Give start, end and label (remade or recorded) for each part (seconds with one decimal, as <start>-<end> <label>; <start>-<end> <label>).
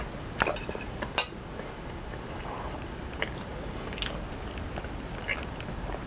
0.0-6.1 recorded